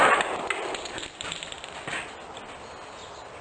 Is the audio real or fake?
real